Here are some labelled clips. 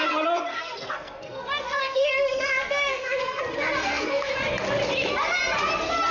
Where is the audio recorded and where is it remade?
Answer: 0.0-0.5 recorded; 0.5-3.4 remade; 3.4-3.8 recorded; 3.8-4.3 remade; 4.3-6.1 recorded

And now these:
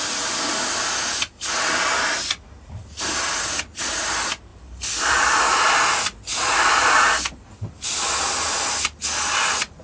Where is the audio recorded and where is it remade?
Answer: 0.0-4.5 recorded; 4.5-5.4 remade; 5.4-6.3 recorded; 6.3-7.1 remade; 7.1-9.8 recorded

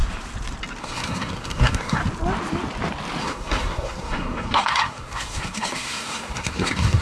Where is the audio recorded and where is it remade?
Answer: 0.0-0.8 recorded; 0.8-2.0 remade; 2.0-3.2 recorded; 3.2-7.0 remade

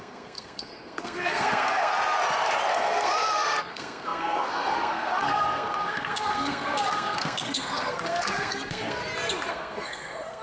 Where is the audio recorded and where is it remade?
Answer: 0.0-1.9 remade; 1.9-2.7 recorded; 2.7-9.0 remade; 9.0-9.5 recorded; 9.5-10.4 remade